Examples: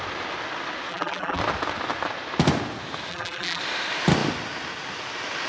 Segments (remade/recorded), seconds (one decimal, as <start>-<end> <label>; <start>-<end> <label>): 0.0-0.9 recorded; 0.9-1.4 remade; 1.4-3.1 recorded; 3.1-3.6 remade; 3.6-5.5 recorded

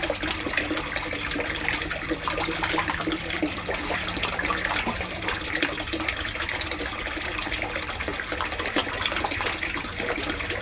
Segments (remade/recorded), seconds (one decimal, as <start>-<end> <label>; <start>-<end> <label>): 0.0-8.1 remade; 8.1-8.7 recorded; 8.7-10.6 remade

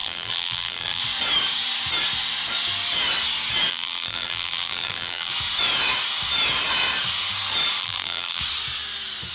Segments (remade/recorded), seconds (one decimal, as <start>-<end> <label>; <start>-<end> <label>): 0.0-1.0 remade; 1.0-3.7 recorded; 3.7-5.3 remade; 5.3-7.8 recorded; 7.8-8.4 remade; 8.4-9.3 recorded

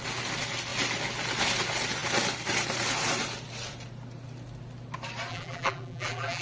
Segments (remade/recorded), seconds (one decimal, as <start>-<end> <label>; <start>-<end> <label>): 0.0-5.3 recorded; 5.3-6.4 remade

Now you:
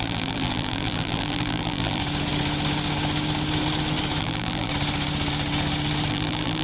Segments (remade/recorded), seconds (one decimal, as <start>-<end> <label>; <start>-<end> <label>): 0.0-2.0 remade; 2.0-4.2 recorded; 4.2-4.7 remade; 4.7-6.1 recorded; 6.1-6.6 remade